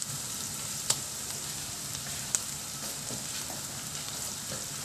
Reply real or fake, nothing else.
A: fake